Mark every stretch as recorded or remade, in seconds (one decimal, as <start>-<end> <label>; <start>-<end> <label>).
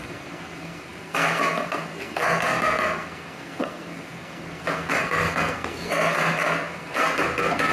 0.0-7.7 remade